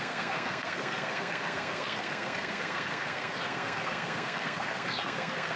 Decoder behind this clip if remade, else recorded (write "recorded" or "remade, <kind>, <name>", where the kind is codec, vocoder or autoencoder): remade, codec, SNAC